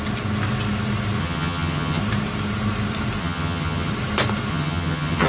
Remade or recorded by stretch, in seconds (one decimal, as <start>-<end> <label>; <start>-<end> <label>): 0.0-1.2 recorded; 1.2-2.0 remade; 2.0-3.2 recorded; 3.2-3.9 remade; 3.9-4.5 recorded; 4.5-5.3 remade